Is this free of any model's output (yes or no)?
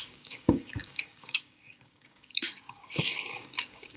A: no